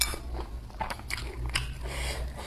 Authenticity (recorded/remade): recorded